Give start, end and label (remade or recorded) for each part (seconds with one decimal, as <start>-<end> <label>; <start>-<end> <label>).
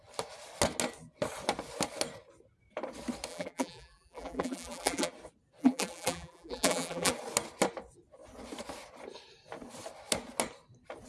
0.0-3.3 recorded; 3.3-5.1 remade; 5.1-5.6 recorded; 5.6-7.1 remade; 7.1-11.1 recorded